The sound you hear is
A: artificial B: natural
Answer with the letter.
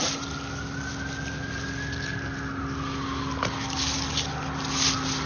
B